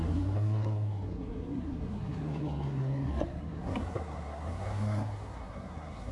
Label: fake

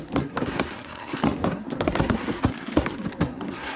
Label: fake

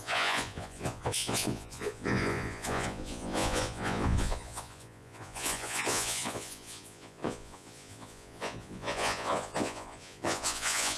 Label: fake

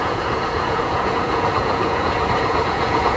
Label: fake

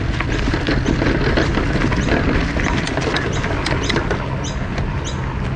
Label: real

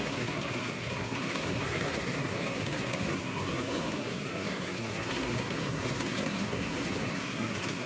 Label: fake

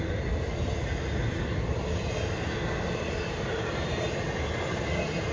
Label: real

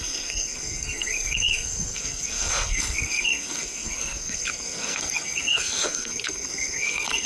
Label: fake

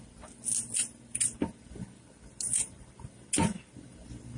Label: real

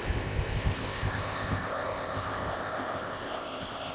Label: fake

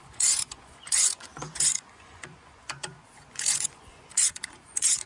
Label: fake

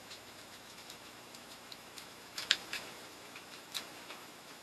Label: fake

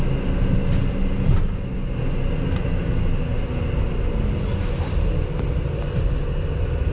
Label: real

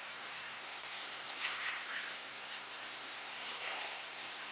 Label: fake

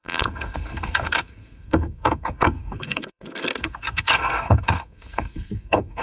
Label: fake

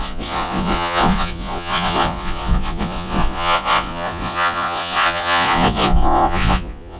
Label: fake